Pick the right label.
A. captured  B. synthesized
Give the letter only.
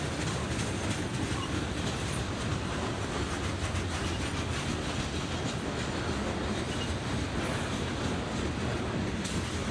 A